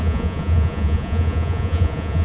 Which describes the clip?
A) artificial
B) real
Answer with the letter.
A